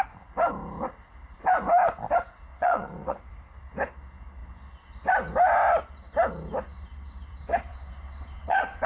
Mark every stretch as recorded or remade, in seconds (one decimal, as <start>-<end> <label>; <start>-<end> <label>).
0.0-2.5 recorded; 2.5-3.2 remade; 3.2-7.7 recorded; 7.7-8.9 remade